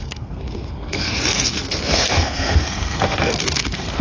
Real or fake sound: fake